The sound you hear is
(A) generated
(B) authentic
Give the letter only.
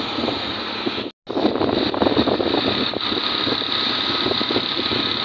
B